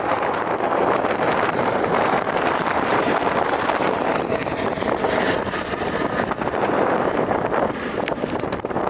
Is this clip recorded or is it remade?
remade